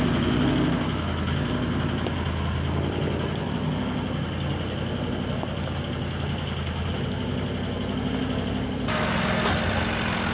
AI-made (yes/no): no